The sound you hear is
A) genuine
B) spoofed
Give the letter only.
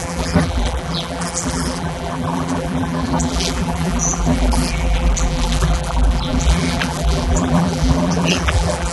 B